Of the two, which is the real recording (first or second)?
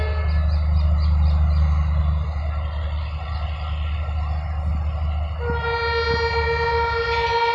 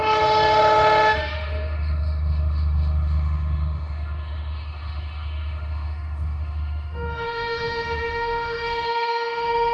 first